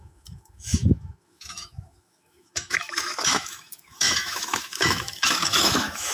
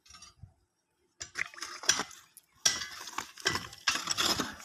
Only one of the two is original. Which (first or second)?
second